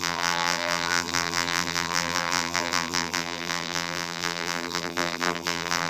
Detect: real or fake fake